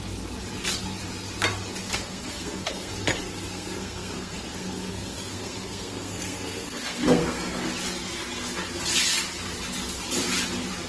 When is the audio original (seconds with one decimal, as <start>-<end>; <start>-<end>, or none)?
0.0-1.8; 2.9-3.5; 7.7-10.9